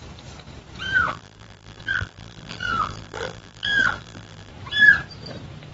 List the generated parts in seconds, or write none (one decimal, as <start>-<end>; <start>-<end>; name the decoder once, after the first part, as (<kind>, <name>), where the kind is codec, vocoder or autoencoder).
1.1-4.5 (vocoder, BigVGAN v2)